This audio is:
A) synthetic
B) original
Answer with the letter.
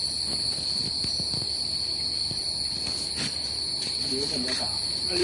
B